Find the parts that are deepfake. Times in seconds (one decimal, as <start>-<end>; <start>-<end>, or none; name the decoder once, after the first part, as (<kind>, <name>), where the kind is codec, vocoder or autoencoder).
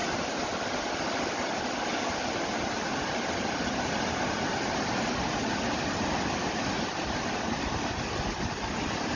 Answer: none